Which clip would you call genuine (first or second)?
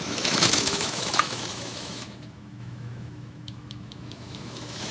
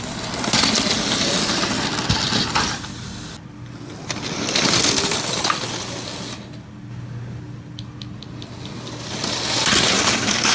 second